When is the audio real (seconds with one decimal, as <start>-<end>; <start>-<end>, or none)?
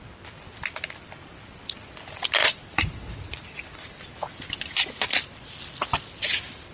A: 0.0-2.4; 4.0-6.7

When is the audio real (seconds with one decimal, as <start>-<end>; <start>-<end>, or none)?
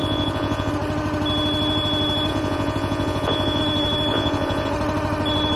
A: 0.7-2.3; 3.6-4.1; 4.7-5.6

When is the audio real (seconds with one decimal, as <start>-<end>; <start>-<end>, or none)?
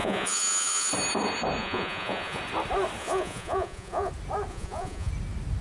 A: 0.9-1.6; 2.4-3.0; 4.1-4.5; 5.1-5.6